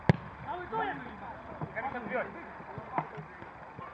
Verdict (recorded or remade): recorded